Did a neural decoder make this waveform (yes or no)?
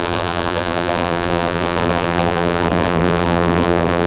yes